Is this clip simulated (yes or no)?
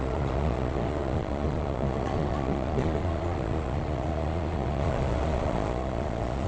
yes